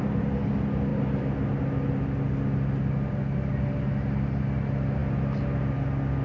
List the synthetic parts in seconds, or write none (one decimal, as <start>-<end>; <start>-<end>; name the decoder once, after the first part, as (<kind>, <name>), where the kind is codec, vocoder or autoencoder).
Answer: none